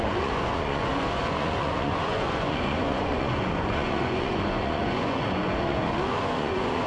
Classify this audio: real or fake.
fake